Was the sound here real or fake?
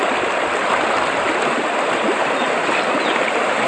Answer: real